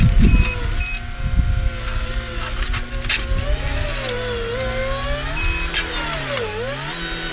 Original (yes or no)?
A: yes